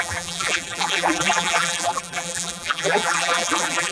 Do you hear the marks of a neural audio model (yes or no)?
yes